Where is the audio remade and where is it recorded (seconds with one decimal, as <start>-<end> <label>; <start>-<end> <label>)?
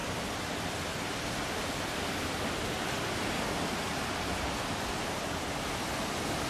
0.0-1.3 recorded; 1.3-6.5 remade